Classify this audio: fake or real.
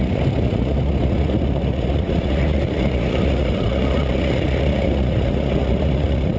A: fake